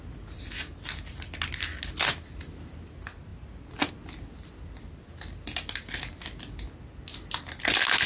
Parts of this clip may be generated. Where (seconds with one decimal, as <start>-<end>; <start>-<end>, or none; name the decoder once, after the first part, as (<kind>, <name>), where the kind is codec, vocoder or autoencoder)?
none